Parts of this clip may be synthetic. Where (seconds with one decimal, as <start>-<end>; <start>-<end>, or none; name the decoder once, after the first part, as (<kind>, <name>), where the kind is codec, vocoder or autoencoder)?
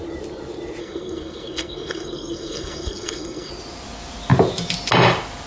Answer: 0.8-3.5 (codec, SNAC)